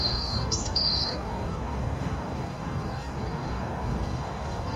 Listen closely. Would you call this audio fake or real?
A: fake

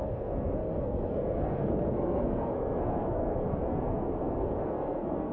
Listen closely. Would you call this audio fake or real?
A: fake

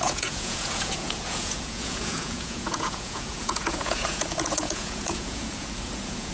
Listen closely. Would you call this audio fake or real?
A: fake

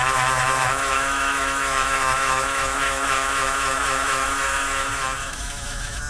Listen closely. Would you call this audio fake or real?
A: fake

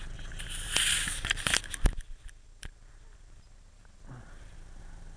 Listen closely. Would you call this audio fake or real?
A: real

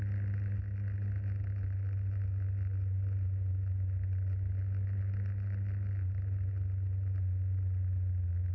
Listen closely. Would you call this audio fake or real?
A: real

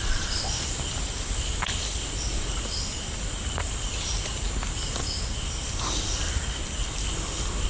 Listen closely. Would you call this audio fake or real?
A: fake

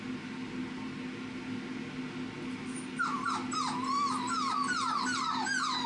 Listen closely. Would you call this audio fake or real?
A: real